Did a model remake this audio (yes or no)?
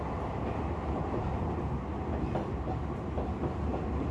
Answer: no